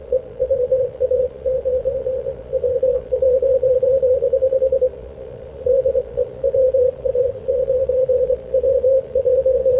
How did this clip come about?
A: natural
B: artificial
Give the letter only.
B